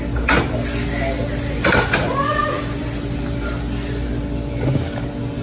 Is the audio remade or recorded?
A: recorded